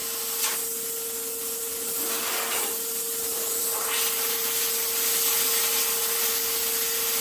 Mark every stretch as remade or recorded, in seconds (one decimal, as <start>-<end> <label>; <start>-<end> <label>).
0.0-7.2 recorded

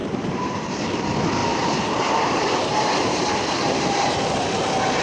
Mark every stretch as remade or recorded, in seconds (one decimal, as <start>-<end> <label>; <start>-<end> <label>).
0.0-0.7 remade; 0.7-1.4 recorded; 1.4-4.4 remade; 4.4-5.0 recorded

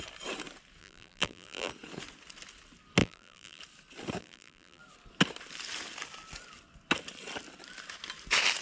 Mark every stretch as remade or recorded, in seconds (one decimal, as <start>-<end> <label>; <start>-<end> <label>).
0.0-0.8 recorded; 0.8-1.7 remade; 1.7-3.0 recorded; 3.0-3.6 remade; 3.6-4.2 recorded; 4.2-4.8 remade; 4.8-8.6 recorded

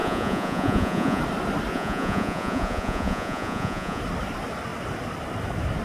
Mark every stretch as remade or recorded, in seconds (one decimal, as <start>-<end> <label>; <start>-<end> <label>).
0.0-1.2 remade; 1.2-1.7 recorded; 1.7-4.0 remade; 4.0-5.8 recorded

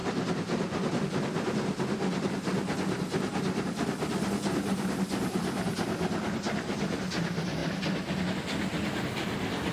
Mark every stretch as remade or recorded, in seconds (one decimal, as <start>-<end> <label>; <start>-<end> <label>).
0.0-9.7 recorded

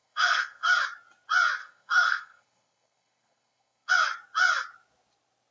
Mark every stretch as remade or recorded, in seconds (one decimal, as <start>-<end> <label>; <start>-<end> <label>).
0.0-0.7 remade; 0.7-1.6 recorded; 1.6-3.9 remade; 3.9-5.5 recorded

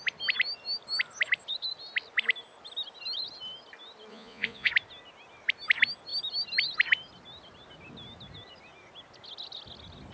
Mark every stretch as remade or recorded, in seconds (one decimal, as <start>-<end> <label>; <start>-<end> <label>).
0.0-4.1 recorded; 4.1-4.7 remade; 4.7-10.1 recorded